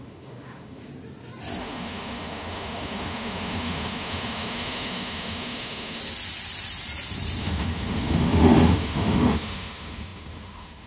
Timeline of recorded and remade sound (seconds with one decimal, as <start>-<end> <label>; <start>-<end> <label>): 0.0-0.9 remade; 0.9-1.6 recorded; 1.6-6.0 remade; 6.0-7.4 recorded; 7.4-10.9 remade